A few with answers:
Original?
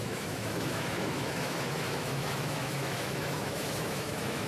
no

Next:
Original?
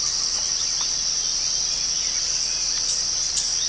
yes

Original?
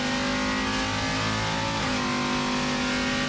yes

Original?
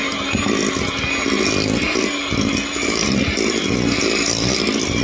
yes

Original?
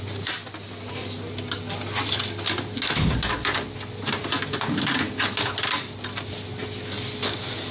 yes